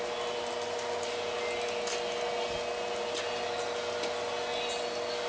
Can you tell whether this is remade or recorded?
recorded